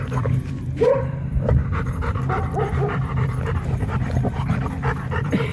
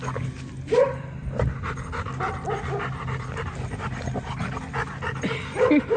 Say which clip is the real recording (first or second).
second